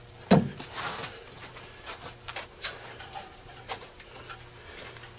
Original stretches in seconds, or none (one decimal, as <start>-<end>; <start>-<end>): 0.0-1.0; 4.1-5.2